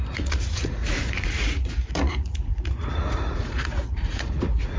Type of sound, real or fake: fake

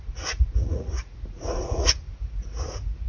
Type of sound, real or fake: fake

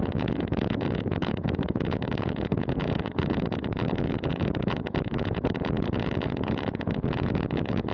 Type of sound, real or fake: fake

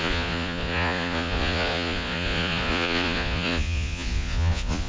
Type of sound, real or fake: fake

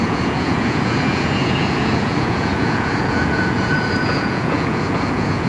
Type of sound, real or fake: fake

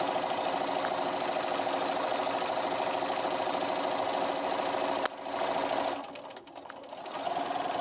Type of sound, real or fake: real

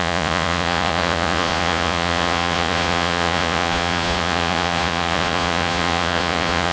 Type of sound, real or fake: fake